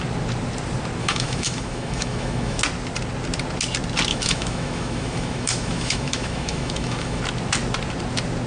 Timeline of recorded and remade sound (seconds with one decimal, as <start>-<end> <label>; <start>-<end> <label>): 0.0-1.0 recorded; 1.0-2.6 remade; 2.6-4.1 recorded; 4.1-7.2 remade; 7.2-8.5 recorded